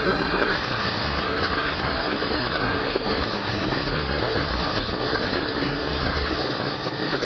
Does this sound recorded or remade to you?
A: remade